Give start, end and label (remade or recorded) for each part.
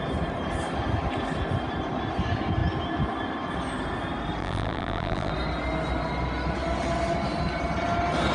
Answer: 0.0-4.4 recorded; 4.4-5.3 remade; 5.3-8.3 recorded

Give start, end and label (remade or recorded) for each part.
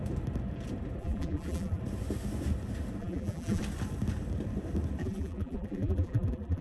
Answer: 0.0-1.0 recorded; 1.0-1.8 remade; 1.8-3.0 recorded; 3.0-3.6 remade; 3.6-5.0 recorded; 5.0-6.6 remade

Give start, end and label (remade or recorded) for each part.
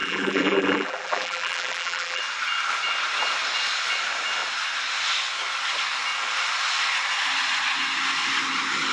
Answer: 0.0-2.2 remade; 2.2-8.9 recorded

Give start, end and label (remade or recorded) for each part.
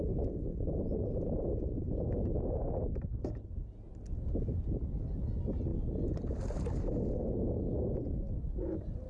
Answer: 0.0-0.5 recorded; 0.5-3.0 remade; 3.0-9.1 recorded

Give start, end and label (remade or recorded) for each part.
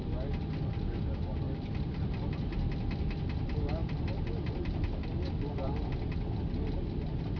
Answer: 0.0-7.4 recorded